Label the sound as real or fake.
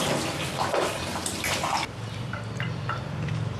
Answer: fake